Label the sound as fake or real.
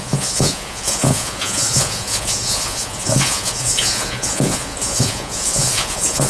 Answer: fake